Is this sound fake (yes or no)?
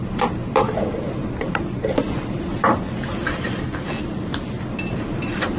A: yes